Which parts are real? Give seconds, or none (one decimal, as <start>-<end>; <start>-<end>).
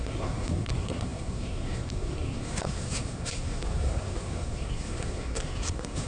none